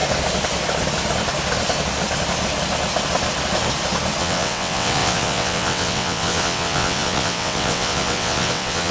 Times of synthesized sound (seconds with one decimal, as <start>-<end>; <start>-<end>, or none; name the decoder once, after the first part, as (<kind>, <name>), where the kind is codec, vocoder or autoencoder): 4.2-8.9 (vocoder, WaveNeXt)